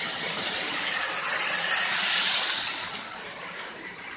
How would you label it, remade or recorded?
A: remade